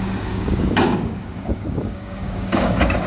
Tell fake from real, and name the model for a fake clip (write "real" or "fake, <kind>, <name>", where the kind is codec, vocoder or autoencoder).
fake, codec, DAC